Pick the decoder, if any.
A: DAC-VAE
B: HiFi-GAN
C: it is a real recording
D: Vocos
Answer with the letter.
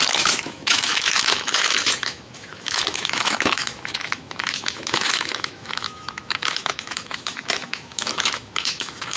A